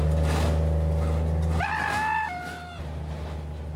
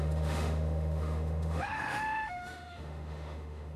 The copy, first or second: second